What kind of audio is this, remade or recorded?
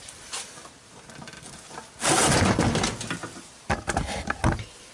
recorded